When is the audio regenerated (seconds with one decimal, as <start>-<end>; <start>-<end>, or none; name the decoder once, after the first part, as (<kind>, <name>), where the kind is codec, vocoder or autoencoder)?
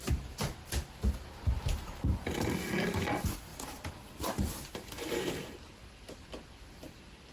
none